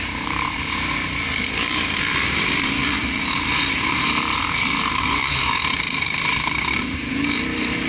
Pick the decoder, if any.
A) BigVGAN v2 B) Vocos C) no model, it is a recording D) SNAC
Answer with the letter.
A